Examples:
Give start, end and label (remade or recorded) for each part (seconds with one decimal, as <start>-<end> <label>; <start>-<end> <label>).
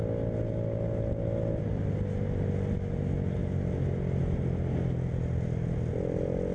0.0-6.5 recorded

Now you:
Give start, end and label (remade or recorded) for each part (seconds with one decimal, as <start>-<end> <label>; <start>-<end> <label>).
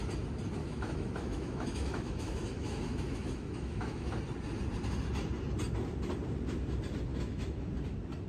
0.0-0.6 recorded; 0.6-4.1 remade; 4.1-7.1 recorded; 7.1-7.7 remade; 7.7-8.3 recorded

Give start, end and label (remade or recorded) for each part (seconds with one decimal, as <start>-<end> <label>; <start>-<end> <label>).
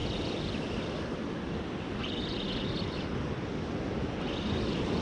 0.0-5.0 recorded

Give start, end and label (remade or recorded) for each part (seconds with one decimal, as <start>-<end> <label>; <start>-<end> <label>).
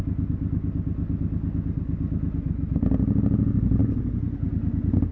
0.0-5.1 recorded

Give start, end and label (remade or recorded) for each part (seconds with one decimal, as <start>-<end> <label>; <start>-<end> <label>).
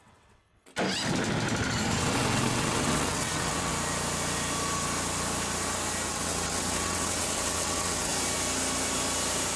0.0-0.7 remade; 0.7-2.0 recorded; 2.0-3.7 remade; 3.7-6.1 recorded; 6.1-8.1 remade; 8.1-9.6 recorded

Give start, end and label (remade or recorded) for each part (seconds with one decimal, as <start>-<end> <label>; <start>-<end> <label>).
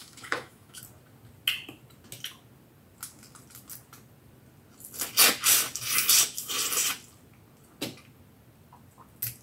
0.0-0.8 remade; 0.8-9.4 recorded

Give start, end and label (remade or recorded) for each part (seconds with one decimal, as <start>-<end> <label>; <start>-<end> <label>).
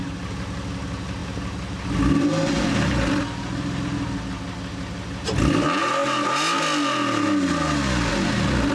0.0-8.7 recorded